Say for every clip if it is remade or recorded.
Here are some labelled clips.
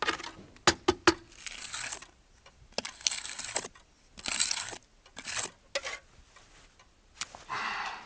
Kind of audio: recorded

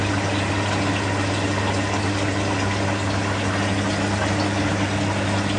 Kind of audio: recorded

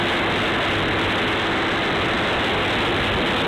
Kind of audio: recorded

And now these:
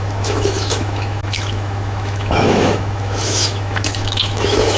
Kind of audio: remade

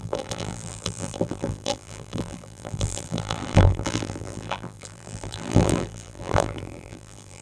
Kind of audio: remade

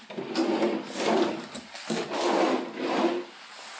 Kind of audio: recorded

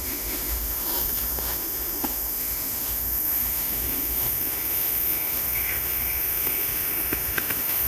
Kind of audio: remade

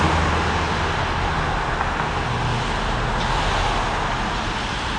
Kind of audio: recorded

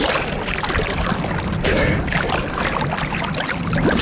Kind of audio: recorded